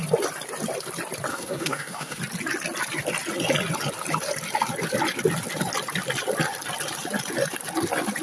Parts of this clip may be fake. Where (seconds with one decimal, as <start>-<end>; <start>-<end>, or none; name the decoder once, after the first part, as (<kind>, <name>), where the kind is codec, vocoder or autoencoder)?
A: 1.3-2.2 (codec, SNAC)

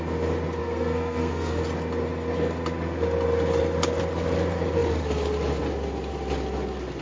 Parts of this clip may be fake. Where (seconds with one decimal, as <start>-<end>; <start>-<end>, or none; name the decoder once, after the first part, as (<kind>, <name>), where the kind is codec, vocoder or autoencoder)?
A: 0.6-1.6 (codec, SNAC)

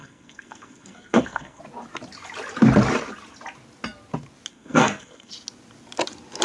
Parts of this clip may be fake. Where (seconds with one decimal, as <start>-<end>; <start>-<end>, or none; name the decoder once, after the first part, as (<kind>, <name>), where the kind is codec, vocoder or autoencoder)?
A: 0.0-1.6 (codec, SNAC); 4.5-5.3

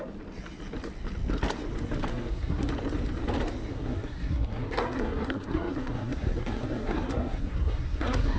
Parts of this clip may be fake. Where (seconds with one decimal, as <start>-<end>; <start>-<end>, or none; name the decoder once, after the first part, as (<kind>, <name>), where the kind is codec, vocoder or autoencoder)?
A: 2.1-2.7 (codec, SNAC); 3.7-8.4